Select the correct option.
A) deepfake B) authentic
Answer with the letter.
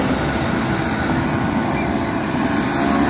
B